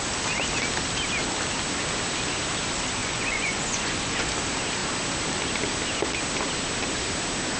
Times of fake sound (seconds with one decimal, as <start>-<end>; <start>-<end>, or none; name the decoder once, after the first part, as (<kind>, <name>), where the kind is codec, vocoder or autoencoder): 3.0-4.3 (vocoder, Vocos)